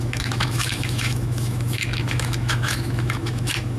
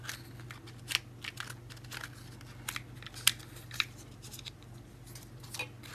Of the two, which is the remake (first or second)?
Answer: first